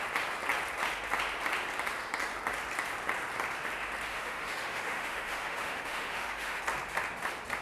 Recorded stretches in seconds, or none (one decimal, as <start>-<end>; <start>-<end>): 0.0-4.1; 6.6-7.6